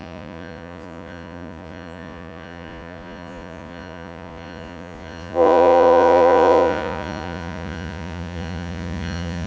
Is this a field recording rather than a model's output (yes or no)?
no